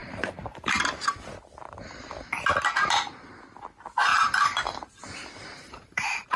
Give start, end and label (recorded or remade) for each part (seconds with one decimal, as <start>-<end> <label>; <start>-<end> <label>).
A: 0.0-1.8 remade; 1.8-4.1 recorded; 4.1-6.4 remade